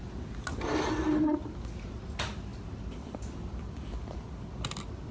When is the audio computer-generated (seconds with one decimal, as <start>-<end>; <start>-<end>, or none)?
none